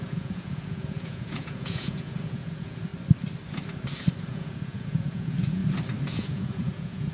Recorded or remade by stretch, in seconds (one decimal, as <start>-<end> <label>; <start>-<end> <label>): 0.0-2.9 remade; 2.9-4.2 recorded; 4.2-5.6 remade; 5.6-6.1 recorded; 6.1-7.1 remade